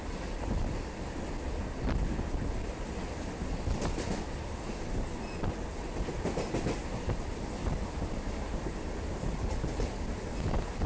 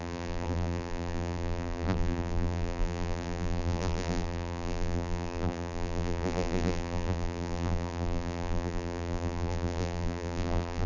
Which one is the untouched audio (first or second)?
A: first